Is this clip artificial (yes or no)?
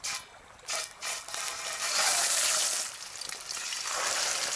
no